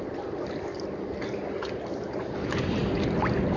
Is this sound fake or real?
real